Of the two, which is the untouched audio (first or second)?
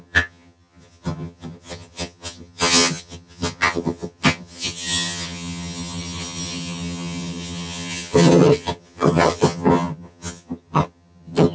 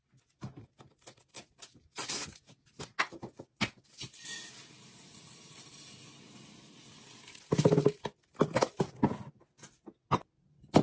second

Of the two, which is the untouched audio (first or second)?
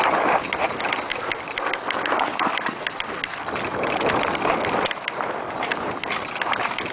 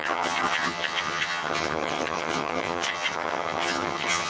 first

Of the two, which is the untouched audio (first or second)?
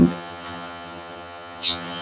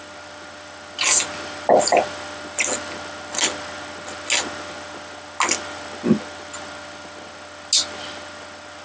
second